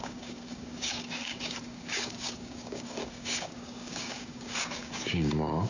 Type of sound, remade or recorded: remade